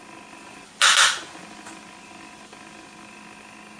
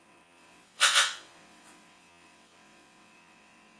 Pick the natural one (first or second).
first